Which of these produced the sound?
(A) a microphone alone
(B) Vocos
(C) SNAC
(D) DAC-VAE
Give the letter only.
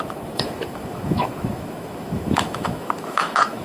D